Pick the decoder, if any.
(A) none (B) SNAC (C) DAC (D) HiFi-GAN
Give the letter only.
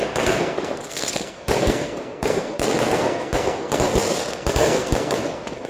B